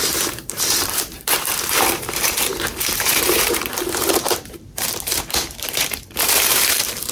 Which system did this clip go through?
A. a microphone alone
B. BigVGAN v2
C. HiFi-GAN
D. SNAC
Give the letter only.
B